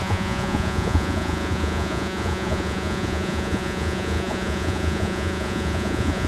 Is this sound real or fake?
fake